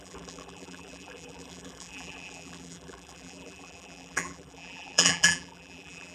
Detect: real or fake fake